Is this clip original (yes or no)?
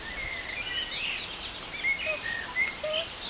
yes